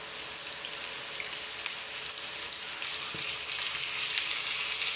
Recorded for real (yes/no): yes